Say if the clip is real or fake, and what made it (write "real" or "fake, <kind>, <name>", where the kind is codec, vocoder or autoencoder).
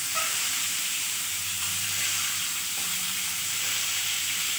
fake, vocoder, BigVGAN v2